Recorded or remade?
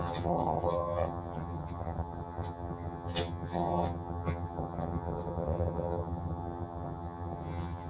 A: remade